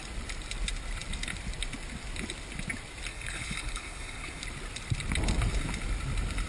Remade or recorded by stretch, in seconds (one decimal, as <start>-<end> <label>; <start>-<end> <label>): 0.0-3.1 recorded; 3.1-4.4 remade; 4.4-6.5 recorded